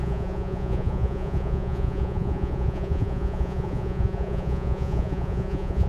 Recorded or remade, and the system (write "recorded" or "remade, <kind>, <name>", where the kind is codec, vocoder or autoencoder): remade, vocoder, Vocos